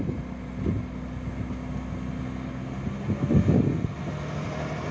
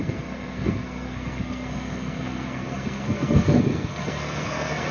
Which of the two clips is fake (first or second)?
second